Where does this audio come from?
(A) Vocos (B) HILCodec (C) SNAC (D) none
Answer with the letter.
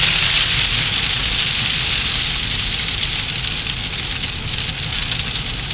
D